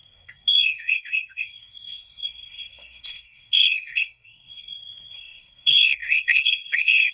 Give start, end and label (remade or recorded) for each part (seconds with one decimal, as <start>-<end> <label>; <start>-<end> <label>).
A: 0.0-7.1 remade